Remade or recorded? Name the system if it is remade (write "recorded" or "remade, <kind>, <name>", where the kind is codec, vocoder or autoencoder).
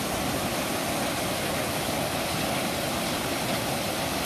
recorded